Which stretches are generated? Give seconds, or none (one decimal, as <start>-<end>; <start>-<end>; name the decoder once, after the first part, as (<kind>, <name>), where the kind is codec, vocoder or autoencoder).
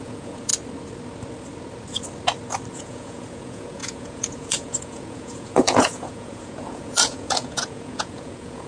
0.0-0.5 (vocoder, Vocos); 2.7-8.7